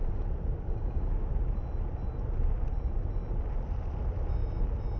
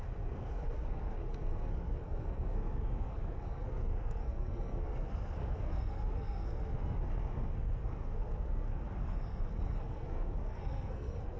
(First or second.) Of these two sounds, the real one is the first